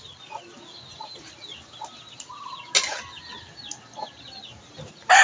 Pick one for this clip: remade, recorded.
recorded